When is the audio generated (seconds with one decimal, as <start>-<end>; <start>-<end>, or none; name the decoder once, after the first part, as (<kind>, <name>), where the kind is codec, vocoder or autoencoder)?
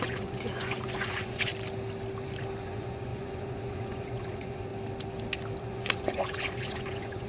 0.0-1.5 (vocoder, Vocos); 2.6-4.7; 5.6-7.3